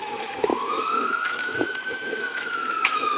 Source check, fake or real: fake